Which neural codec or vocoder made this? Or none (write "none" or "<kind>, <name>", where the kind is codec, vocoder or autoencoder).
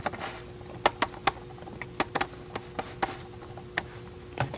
none